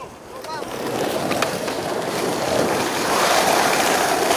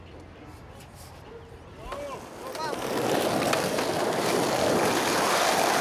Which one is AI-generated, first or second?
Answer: first